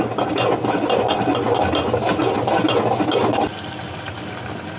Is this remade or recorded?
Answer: recorded